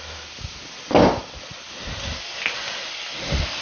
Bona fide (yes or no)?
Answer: yes